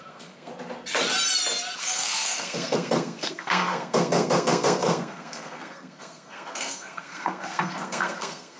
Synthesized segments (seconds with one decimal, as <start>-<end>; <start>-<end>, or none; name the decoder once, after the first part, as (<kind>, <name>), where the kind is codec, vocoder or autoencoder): 0.0-0.5 (codec, SNAC); 1.8-8.6